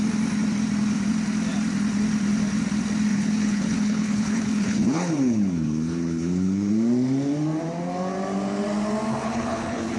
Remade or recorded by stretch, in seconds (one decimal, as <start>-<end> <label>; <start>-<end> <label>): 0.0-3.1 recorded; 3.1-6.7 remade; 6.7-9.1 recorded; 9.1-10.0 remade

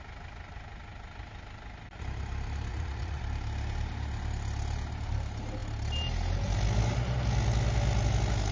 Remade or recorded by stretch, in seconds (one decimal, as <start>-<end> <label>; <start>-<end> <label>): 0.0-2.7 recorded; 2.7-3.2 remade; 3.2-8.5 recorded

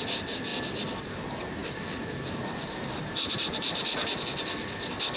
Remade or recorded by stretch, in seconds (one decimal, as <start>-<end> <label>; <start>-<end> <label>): 0.0-1.6 recorded; 1.6-4.7 remade; 4.7-5.2 recorded

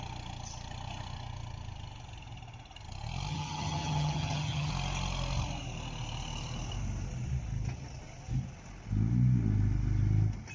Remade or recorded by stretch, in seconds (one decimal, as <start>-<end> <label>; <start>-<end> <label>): 0.0-3.3 recorded; 3.3-4.7 remade; 4.7-10.5 recorded

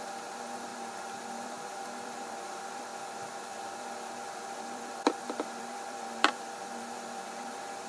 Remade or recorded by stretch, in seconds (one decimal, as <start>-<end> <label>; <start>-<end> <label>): 0.0-2.9 remade; 2.9-3.4 recorded; 3.4-7.9 remade

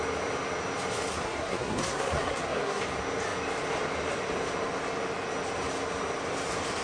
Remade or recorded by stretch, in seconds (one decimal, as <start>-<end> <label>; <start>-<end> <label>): 0.0-1.1 recorded; 1.1-2.8 remade; 2.8-6.8 recorded

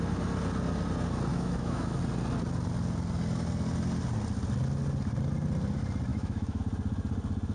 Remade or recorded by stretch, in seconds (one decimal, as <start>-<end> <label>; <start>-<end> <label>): 0.0-1.3 recorded; 1.3-2.0 remade; 2.0-6.1 recorded; 6.1-6.6 remade; 6.6-7.5 recorded